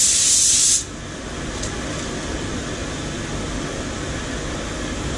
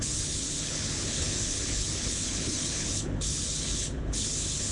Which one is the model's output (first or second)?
second